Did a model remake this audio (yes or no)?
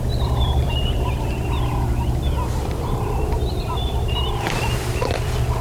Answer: yes